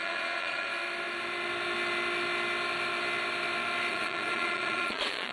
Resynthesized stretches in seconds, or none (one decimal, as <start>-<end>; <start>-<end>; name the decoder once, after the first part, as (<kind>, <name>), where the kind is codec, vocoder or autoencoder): 0.0-0.7 (vocoder, Vocos); 3.9-5.3